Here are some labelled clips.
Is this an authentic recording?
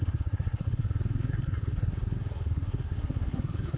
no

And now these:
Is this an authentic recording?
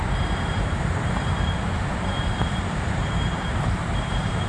no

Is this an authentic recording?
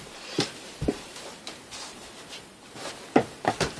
no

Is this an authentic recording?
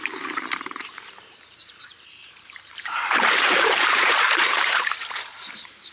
no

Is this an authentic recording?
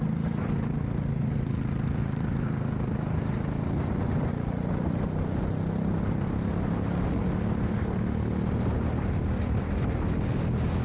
yes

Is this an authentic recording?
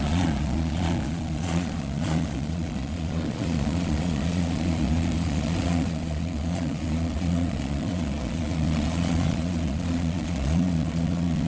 no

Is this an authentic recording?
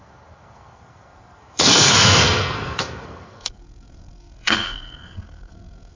no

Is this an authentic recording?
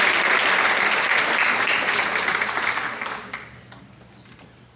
yes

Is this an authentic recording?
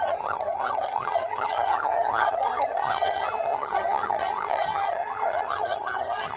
no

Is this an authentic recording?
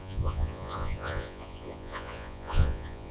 no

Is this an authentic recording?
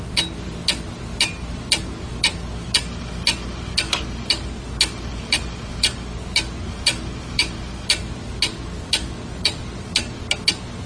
yes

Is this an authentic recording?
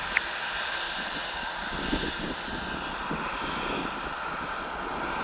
yes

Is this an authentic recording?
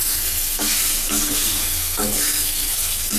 no